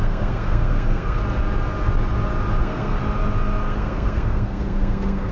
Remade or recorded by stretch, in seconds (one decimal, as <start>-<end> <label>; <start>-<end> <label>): 0.0-1.2 remade; 1.2-2.6 recorded; 2.6-3.0 remade; 3.0-3.6 recorded; 3.6-5.3 remade